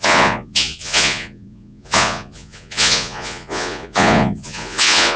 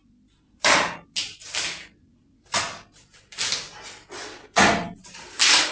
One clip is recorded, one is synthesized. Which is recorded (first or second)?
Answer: second